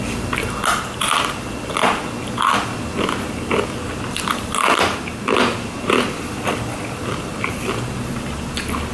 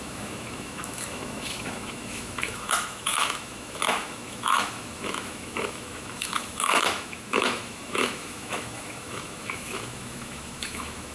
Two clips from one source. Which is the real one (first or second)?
first